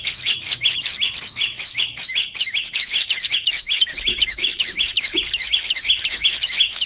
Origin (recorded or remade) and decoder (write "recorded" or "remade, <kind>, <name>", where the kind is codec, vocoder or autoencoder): remade, autoencoder, DAC-VAE